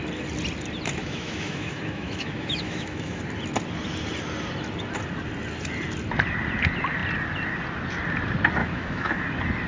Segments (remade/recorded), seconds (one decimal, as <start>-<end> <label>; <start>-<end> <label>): 0.0-1.0 recorded; 1.0-3.2 remade; 3.2-8.6 recorded; 8.6-9.2 remade; 9.2-9.7 recorded